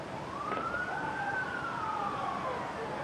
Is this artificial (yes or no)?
yes